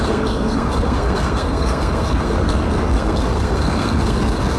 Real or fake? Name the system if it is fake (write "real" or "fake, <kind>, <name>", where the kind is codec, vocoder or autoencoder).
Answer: fake, codec, SNAC